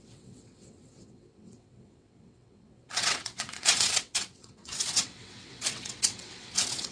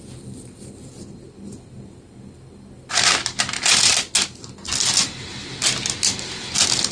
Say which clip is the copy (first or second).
first